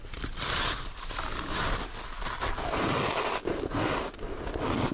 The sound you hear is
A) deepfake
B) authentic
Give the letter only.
B